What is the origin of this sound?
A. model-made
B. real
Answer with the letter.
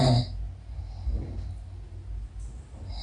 B